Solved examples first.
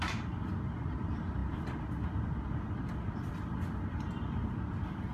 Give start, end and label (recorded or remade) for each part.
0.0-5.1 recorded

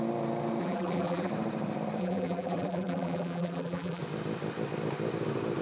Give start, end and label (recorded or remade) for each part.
0.0-0.6 recorded; 0.6-1.3 remade; 1.3-2.0 recorded; 2.0-4.0 remade; 4.0-5.6 recorded

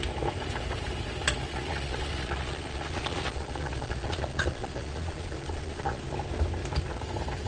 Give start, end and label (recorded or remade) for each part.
0.0-1.5 recorded; 1.5-6.0 remade; 6.0-7.5 recorded